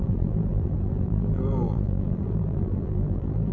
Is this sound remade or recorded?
remade